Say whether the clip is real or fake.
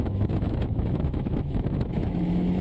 fake